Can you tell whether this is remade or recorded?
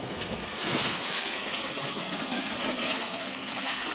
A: remade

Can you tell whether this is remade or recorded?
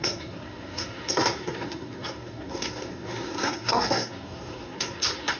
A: remade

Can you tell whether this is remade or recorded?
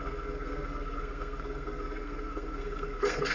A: remade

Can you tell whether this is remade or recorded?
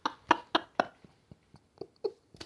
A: recorded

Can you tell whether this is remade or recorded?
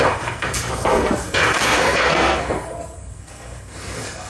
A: remade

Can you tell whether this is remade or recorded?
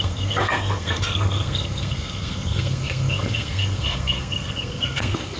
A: remade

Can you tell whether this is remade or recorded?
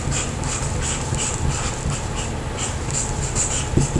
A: recorded